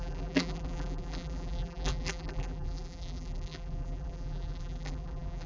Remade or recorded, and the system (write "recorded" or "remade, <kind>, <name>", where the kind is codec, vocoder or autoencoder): remade, vocoder, BigVGAN v2